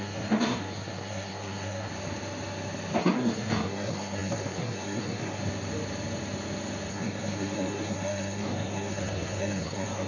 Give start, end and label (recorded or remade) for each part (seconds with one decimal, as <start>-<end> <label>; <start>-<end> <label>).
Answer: 0.0-1.9 remade; 1.9-3.0 recorded; 3.0-5.4 remade; 5.4-6.9 recorded; 6.9-10.1 remade